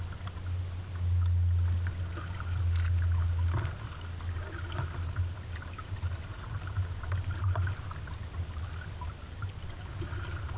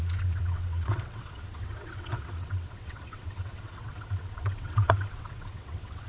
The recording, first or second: first